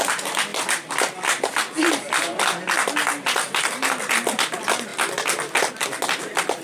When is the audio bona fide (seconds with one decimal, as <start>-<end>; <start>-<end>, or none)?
0.0-0.5; 4.1-6.6